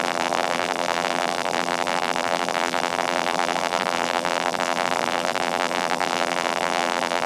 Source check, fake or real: fake